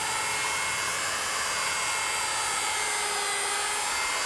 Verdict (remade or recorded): recorded